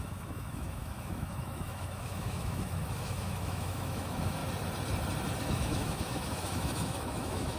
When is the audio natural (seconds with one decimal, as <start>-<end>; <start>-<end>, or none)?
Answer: 4.4-5.4